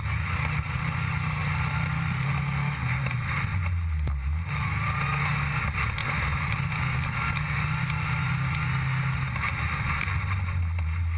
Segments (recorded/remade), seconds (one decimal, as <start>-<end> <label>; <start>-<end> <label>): 0.0-1.4 recorded; 1.4-2.3 remade; 2.3-6.0 recorded; 6.0-6.7 remade; 6.7-11.2 recorded